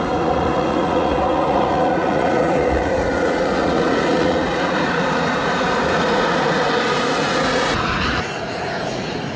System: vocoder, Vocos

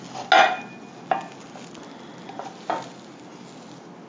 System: none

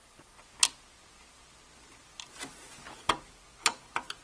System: none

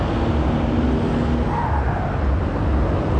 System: none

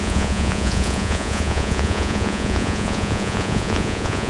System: vocoder, Vocos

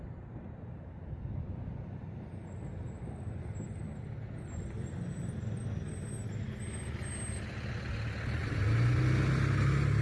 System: none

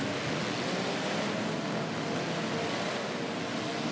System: none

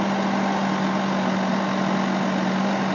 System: none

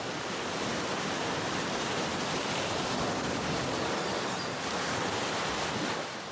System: none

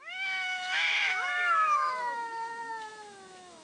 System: autoencoder, DAC-VAE